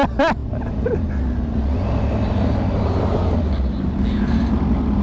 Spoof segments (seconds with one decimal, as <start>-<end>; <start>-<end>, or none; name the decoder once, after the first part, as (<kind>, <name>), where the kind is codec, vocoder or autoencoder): none